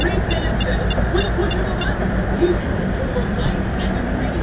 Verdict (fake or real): fake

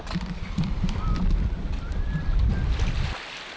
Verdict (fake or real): real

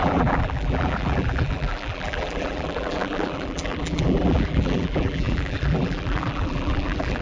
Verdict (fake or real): fake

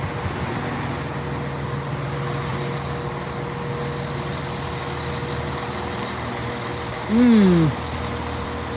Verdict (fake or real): real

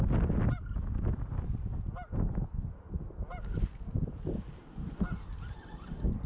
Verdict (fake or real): real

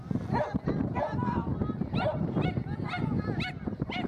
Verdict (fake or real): real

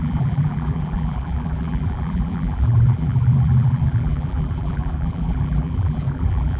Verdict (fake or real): fake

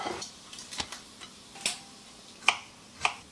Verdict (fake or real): real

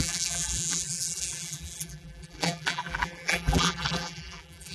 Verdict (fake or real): fake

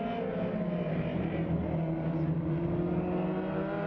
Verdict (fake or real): real